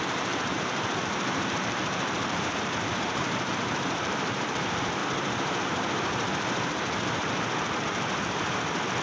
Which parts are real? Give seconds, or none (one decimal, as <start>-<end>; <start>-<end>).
5.0-9.0